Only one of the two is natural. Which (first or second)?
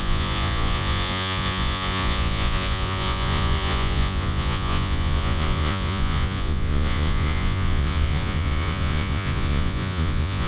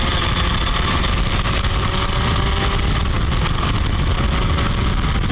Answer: second